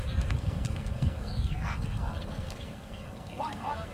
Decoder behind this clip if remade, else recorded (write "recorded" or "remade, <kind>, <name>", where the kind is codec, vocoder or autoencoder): remade, codec, SNAC